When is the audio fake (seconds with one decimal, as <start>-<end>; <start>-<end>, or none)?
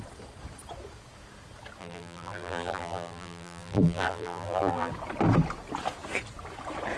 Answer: 1.8-4.9